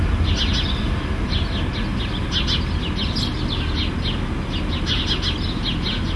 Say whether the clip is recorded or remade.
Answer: recorded